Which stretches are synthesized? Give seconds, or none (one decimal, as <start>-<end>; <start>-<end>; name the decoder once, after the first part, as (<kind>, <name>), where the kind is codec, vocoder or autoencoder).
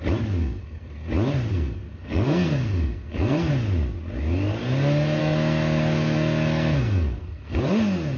0.4-1.1 (codec, SNAC); 1.5-3.5; 5.2-7.6